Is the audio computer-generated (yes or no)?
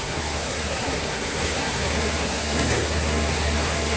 yes